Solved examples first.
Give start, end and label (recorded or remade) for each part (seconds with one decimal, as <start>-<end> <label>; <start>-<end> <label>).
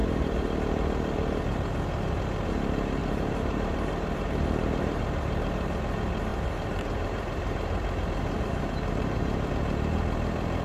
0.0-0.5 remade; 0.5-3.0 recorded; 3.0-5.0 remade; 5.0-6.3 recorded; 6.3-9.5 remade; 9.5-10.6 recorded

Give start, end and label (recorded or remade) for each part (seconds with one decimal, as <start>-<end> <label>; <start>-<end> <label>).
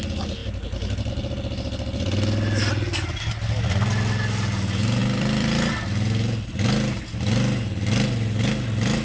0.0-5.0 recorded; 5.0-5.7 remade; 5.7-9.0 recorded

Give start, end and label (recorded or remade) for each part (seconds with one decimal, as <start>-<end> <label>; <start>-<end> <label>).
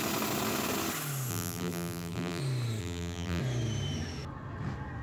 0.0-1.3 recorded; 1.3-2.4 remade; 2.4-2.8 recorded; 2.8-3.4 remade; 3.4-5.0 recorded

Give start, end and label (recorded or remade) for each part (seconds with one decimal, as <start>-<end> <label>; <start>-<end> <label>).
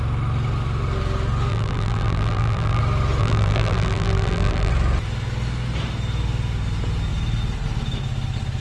0.0-1.5 recorded; 1.5-2.8 remade; 2.8-3.2 recorded; 3.2-4.7 remade; 4.7-8.6 recorded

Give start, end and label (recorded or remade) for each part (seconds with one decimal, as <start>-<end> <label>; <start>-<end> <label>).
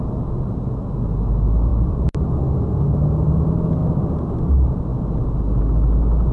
0.0-1.7 recorded; 1.7-2.3 remade; 2.3-3.8 recorded; 3.8-4.5 remade; 4.5-6.3 recorded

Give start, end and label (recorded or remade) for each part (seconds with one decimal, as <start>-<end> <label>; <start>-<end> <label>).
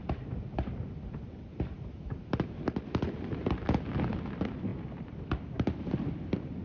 0.0-4.7 recorded; 4.7-6.6 remade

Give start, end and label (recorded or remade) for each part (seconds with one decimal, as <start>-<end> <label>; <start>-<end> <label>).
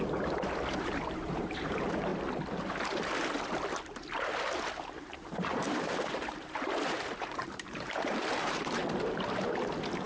0.0-2.1 remade; 2.1-5.0 recorded; 5.0-8.8 remade; 8.8-10.1 recorded